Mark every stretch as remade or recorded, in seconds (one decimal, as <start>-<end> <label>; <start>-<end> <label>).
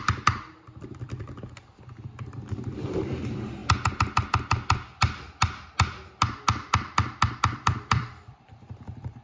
0.0-3.6 remade; 3.6-7.4 recorded; 7.4-9.2 remade